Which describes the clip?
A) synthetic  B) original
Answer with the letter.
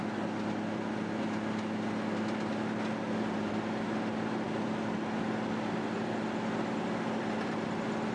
B